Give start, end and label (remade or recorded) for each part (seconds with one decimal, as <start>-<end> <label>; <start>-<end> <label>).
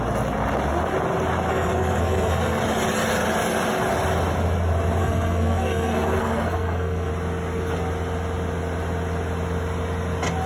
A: 0.0-1.5 recorded; 1.5-2.6 remade; 2.6-5.0 recorded; 5.0-7.1 remade; 7.1-10.5 recorded